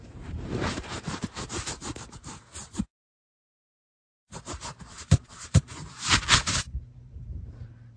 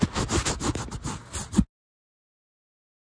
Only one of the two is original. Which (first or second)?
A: second